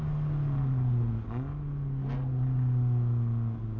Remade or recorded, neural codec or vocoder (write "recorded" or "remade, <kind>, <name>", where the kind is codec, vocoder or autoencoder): recorded